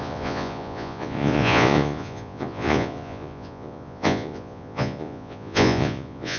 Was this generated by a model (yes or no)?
yes